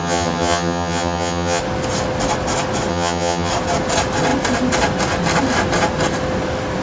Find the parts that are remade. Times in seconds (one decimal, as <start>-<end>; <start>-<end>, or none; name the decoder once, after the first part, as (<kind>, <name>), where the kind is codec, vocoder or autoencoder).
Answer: 0.0-1.6 (vocoder, HiFi-GAN); 2.9-3.5